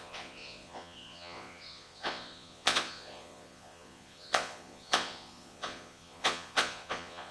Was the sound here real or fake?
fake